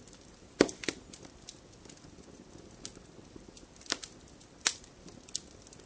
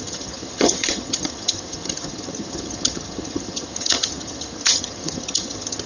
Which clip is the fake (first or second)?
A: second